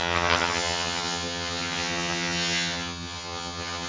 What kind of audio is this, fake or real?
fake